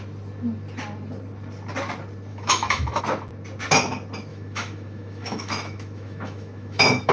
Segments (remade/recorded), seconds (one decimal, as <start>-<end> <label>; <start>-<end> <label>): 0.0-2.3 recorded; 2.3-3.0 remade; 3.0-4.3 recorded; 4.3-7.1 remade